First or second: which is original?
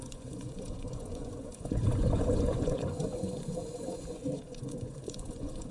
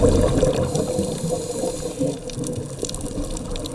second